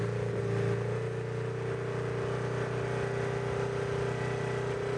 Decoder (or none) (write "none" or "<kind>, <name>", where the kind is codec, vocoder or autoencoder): none